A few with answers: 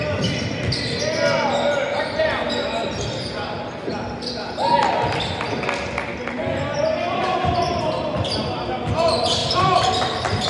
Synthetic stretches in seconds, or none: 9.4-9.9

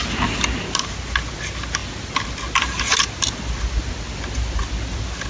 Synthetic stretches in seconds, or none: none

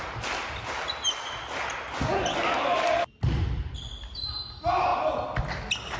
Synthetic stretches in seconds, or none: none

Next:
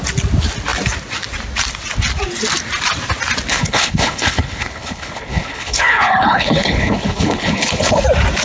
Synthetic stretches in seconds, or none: 3.5-8.0

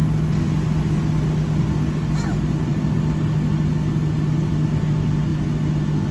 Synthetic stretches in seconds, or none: none

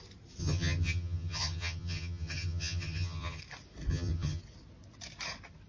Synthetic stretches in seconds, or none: 0.4-3.4; 3.9-4.4

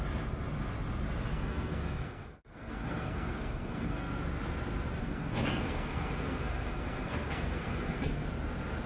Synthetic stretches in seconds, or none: 1.3-4.2; 5.0-8.3

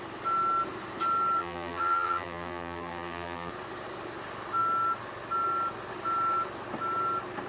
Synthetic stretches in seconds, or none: 1.4-3.5